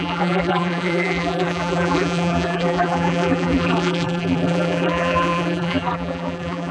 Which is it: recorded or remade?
remade